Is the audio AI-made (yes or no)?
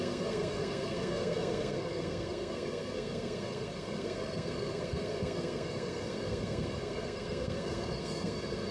yes